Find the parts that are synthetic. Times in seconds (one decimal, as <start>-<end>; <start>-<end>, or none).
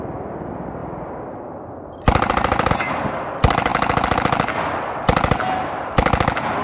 none